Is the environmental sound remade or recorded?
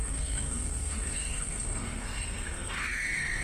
remade